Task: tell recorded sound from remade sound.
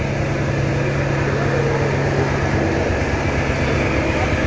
recorded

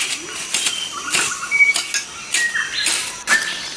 recorded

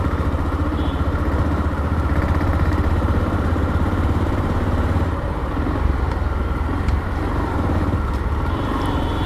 remade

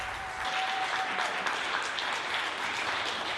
recorded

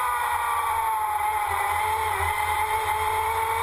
recorded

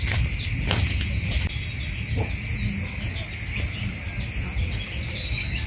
recorded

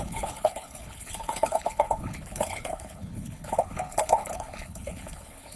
remade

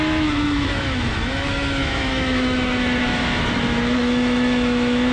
remade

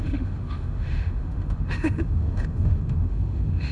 remade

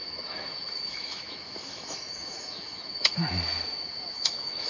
remade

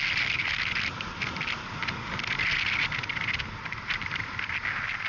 recorded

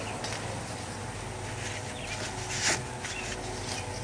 recorded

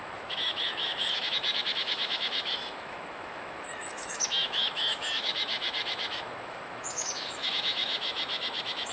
remade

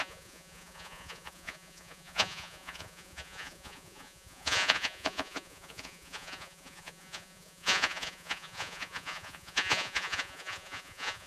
remade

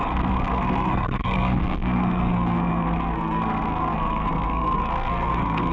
remade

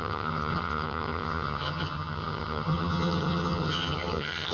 remade